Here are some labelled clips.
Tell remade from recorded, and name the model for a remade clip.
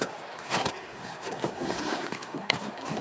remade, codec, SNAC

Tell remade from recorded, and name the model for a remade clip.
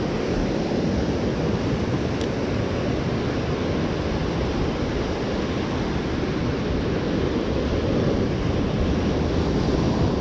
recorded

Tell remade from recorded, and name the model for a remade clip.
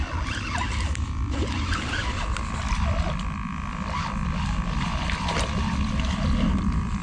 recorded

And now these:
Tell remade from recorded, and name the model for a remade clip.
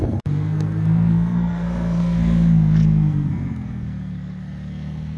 remade, codec, SNAC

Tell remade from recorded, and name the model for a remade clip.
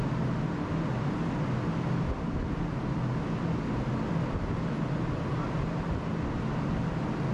recorded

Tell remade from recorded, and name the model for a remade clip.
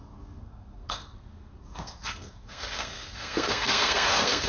remade, codec, SNAC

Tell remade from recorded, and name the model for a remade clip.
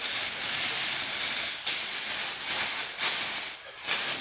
recorded